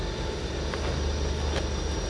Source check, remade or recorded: recorded